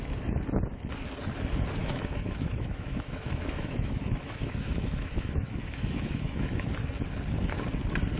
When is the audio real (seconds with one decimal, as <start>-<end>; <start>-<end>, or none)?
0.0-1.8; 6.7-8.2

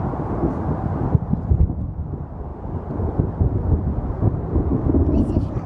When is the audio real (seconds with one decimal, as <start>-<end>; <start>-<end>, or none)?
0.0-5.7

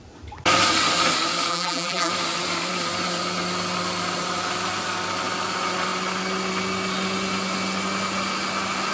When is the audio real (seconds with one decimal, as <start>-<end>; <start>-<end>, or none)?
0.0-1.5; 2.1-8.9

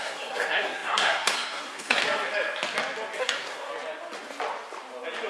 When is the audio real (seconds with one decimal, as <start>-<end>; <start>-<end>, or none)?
2.0-3.2; 3.7-5.3